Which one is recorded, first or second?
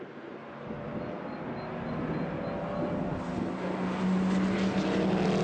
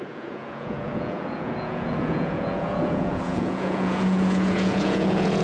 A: first